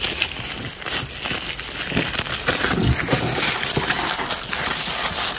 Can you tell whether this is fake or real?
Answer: real